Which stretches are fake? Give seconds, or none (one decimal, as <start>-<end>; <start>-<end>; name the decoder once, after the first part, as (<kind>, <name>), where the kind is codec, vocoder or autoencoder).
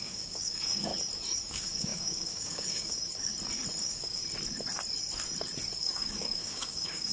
0.0-0.9 (codec, DAC); 1.5-3.3; 3.8-4.2; 5.8-7.1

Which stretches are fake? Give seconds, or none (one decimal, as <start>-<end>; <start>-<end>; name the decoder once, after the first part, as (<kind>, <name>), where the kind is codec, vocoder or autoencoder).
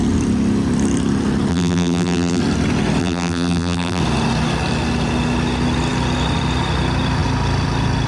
1.5-2.4 (vocoder, BigVGAN v2); 3.0-4.0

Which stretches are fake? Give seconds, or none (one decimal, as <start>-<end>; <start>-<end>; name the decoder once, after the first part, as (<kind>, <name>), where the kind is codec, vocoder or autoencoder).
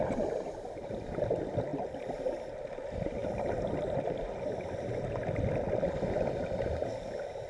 none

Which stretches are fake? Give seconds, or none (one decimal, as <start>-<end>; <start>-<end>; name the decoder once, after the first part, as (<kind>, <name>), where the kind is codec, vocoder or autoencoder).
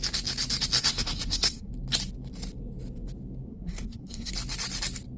0.8-1.7 (codec, SNAC); 3.5-4.3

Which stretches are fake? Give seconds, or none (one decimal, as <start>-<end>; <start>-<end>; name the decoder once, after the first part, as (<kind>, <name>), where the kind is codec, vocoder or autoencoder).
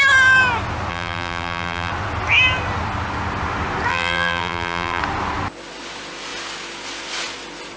0.9-1.9 (vocoder, BigVGAN v2); 3.9-5.0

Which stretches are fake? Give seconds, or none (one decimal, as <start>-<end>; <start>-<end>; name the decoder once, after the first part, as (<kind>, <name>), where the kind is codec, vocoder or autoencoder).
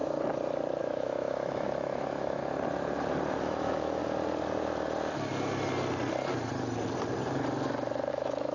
0.8-2.4 (autoencoder, DAC-VAE); 3.4-4.0; 8.1-8.5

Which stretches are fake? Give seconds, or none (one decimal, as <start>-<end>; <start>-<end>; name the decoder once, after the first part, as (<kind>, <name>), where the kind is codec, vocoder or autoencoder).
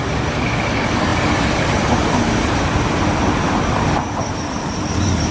none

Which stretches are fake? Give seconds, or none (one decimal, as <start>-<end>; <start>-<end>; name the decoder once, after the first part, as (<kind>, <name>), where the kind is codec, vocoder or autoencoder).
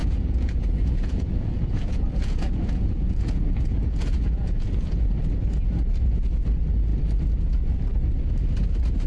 0.0-5.1 (vocoder, Vocos)